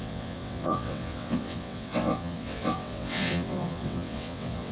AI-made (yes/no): yes